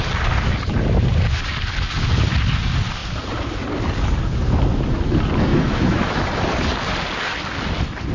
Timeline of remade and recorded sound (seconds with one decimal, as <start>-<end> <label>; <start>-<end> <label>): 0.0-5.5 recorded; 5.5-6.2 remade; 6.2-8.1 recorded